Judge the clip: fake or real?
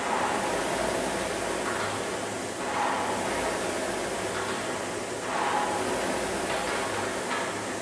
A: real